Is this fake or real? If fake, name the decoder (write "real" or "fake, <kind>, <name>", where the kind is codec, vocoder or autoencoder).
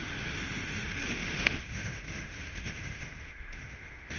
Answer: fake, autoencoder, DAC-VAE